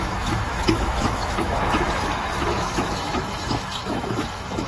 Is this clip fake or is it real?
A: fake